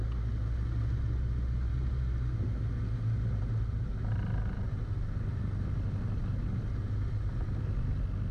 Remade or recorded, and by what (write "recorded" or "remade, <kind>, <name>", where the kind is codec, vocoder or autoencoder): recorded